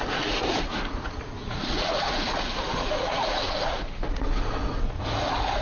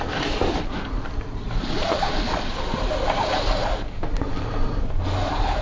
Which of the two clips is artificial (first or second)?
first